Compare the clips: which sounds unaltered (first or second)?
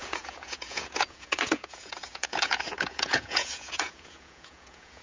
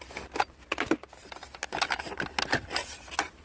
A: second